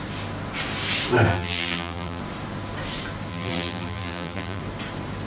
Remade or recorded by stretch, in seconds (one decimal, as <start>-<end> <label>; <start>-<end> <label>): 0.0-1.3 recorded; 1.3-2.2 remade; 2.2-3.3 recorded; 3.3-4.6 remade; 4.6-5.3 recorded